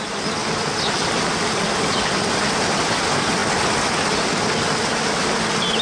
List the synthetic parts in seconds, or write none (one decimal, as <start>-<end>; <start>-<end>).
none